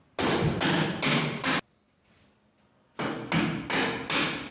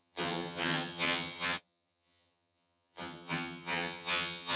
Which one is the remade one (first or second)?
second